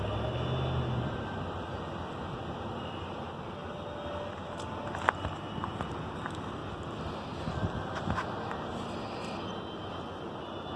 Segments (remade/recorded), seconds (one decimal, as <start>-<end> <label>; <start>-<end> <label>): 0.0-10.8 recorded